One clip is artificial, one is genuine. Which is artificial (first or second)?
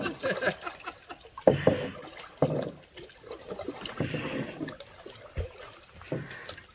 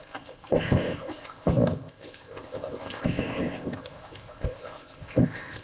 second